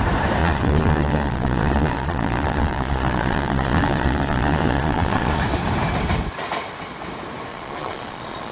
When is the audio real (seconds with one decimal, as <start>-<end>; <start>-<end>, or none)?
0.0-0.4; 5.4-7.5